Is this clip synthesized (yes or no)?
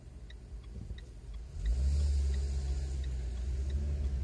no